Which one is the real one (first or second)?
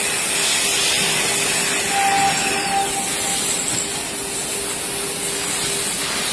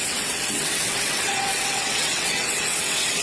first